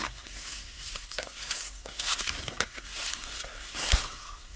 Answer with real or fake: fake